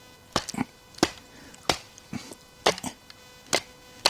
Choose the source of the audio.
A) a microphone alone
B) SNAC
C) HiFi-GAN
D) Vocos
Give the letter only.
A